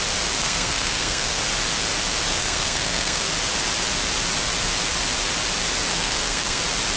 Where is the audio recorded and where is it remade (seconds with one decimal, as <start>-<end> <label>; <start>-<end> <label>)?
0.0-0.4 recorded; 0.4-1.4 remade; 1.4-2.3 recorded; 2.3-3.3 remade; 3.3-5.9 recorded; 5.9-6.6 remade; 6.6-7.0 recorded